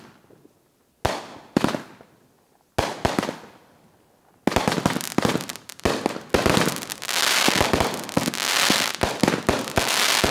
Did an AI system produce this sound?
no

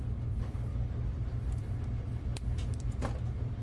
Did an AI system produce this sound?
yes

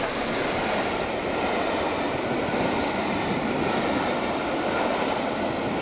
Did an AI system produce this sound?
no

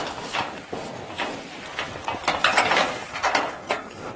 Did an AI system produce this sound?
no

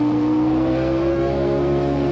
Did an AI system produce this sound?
yes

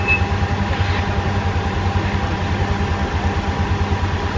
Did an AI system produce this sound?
no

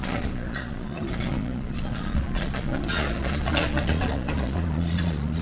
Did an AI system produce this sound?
yes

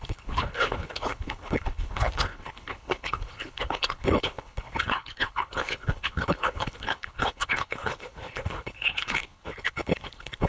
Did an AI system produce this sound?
yes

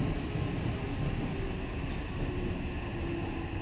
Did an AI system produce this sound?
no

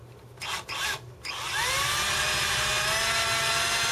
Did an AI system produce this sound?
no